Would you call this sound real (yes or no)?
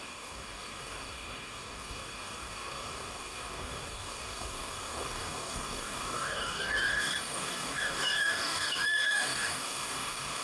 no